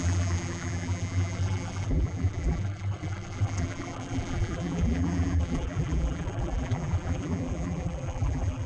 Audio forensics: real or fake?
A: fake